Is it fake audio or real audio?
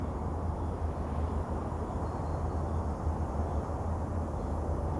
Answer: real